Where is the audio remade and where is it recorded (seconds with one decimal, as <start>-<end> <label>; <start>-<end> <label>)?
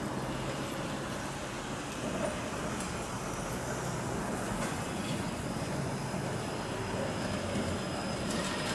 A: 0.0-4.3 recorded; 4.3-5.9 remade; 5.9-8.7 recorded